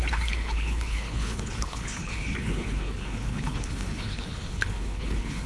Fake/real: fake